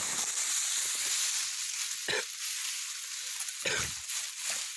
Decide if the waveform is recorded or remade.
recorded